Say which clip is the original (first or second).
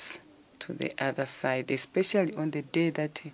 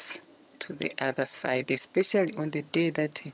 first